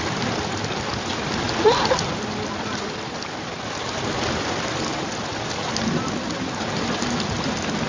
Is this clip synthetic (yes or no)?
no